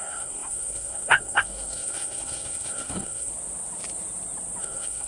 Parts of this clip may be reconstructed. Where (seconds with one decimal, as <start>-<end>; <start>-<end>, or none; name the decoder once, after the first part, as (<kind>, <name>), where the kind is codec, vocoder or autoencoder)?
0.0-3.3 (codec, SNAC); 4.6-5.1